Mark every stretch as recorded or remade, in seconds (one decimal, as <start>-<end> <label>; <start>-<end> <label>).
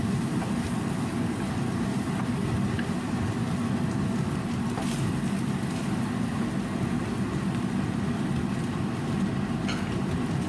0.0-10.5 recorded